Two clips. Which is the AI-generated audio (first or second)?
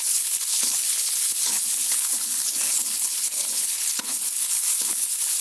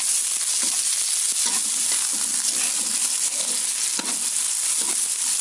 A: first